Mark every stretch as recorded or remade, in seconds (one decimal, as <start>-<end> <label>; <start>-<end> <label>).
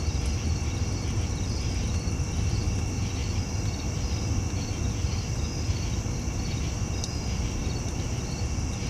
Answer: 0.0-7.6 recorded; 7.6-8.2 remade; 8.2-8.9 recorded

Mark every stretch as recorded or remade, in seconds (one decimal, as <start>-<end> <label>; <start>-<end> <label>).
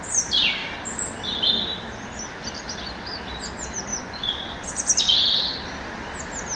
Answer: 0.0-3.9 recorded; 3.9-4.7 remade; 4.7-6.6 recorded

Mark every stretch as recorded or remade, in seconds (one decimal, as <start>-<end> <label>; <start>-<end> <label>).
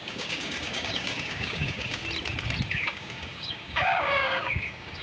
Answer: 0.0-2.0 remade; 2.0-2.7 recorded; 2.7-5.0 remade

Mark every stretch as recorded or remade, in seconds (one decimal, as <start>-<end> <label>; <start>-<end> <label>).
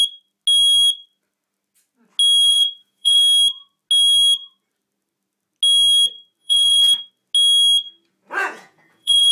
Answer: 0.0-2.5 recorded; 2.5-3.2 remade; 3.2-6.4 recorded; 6.4-7.0 remade; 7.0-8.4 recorded; 8.4-9.3 remade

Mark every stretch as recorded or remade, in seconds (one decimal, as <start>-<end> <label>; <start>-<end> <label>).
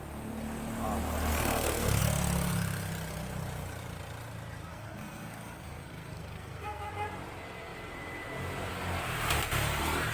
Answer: 0.0-1.3 recorded; 1.3-2.0 remade; 2.0-4.7 recorded; 4.7-6.9 remade; 6.9-10.1 recorded